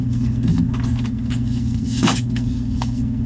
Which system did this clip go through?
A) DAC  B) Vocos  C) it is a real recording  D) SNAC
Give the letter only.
D